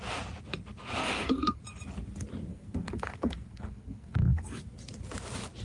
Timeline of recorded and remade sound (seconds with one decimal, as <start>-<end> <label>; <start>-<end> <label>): 0.0-1.0 recorded; 1.0-1.6 remade; 1.6-2.5 recorded; 2.5-4.6 remade; 4.6-5.6 recorded